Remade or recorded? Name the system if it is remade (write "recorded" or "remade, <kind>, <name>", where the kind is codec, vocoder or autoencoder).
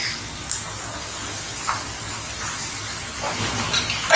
recorded